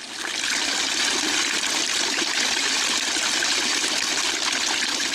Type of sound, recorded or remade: recorded